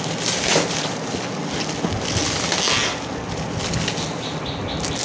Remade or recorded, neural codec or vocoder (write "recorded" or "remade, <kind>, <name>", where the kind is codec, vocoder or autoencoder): recorded